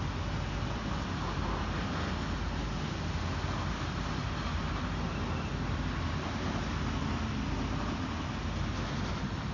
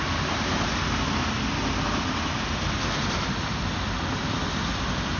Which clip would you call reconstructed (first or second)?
second